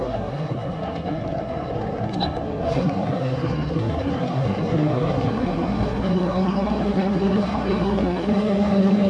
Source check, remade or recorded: remade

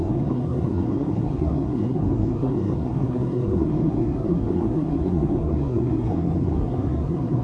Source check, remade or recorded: remade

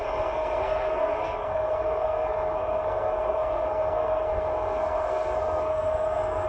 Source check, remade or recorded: remade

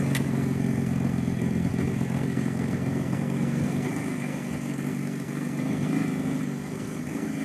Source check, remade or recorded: remade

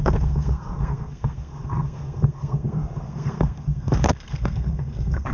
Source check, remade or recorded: remade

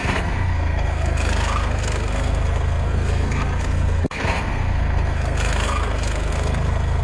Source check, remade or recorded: remade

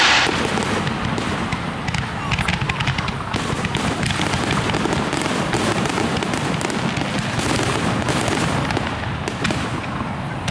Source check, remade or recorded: recorded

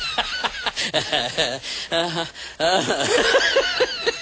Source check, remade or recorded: recorded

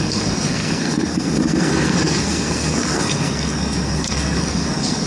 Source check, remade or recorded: remade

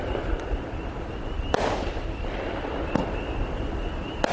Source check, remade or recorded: recorded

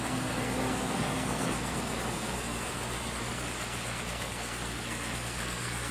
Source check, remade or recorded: remade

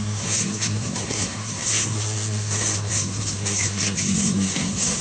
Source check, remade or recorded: remade